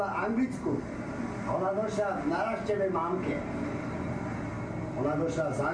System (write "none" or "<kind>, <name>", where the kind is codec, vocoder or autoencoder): none